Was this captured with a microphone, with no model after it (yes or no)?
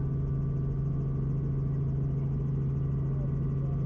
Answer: yes